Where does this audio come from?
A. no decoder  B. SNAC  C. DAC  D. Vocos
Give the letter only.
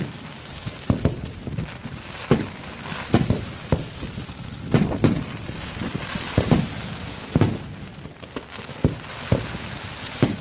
A